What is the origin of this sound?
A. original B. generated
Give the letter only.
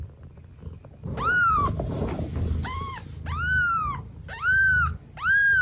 A